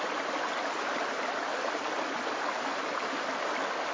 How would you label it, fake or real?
real